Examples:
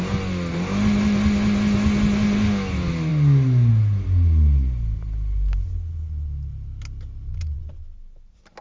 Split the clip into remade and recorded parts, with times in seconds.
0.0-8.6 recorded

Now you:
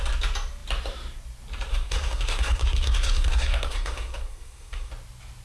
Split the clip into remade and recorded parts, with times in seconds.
0.0-1.7 recorded; 1.7-4.9 remade; 4.9-5.4 recorded

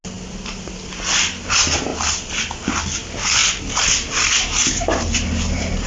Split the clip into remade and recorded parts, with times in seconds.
0.0-5.9 recorded